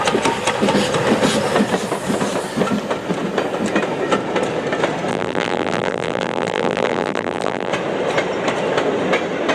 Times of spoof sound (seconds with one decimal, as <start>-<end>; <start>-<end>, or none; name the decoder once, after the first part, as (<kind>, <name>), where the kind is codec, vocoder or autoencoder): 5.1-7.7 (vocoder, BigVGAN v2)